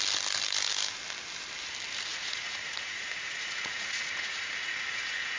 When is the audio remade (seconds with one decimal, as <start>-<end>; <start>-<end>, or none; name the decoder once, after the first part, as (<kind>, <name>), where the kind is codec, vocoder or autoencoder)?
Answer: 2.1-5.4 (vocoder, Vocos)